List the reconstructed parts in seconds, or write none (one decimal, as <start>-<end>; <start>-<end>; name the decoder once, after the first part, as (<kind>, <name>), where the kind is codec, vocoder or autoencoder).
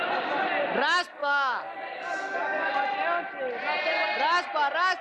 1.2-2.7 (codec, DAC)